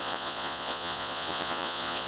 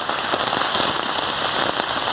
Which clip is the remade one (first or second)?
first